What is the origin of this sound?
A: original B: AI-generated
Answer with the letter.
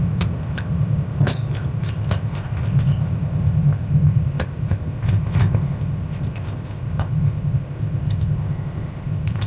B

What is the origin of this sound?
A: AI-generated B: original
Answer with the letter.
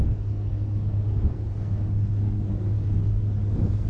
A